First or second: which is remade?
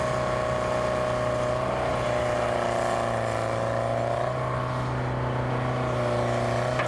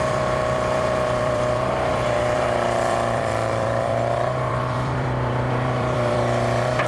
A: second